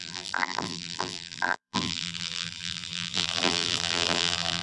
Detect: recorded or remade remade